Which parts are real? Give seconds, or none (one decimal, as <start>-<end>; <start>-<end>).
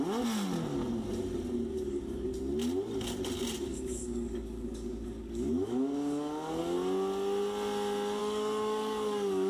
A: 0.0-1.7; 2.3-3.7; 6.6-8.2